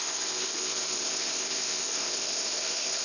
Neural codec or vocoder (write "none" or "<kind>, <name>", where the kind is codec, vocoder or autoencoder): codec, ZipCodec